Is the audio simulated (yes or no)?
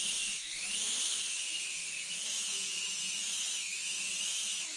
yes